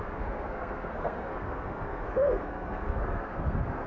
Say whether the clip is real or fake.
fake